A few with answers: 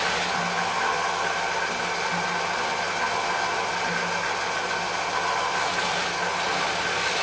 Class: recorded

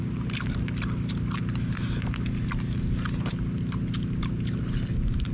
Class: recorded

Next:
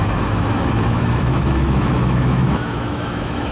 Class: remade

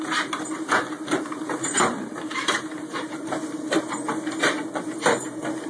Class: remade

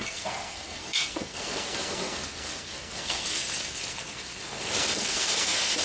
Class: remade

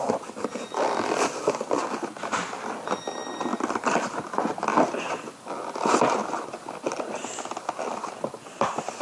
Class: recorded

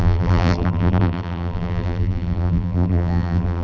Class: remade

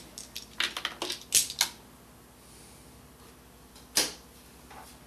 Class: recorded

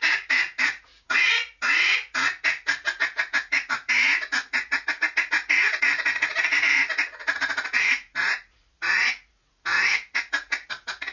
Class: remade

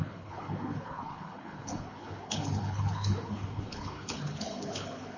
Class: remade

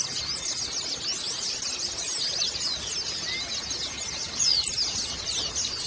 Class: recorded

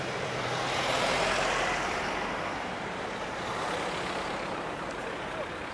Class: remade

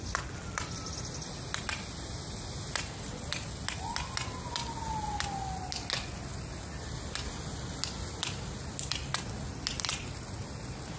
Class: recorded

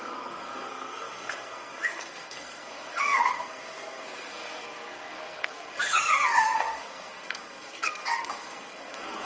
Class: remade